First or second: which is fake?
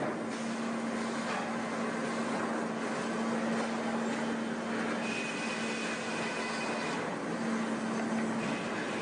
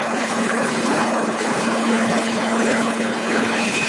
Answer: second